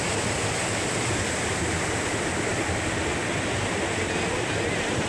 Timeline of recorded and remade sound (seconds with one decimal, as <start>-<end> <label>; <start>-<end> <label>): 0.0-5.1 recorded